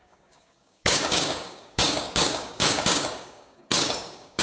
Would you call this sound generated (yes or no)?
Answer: yes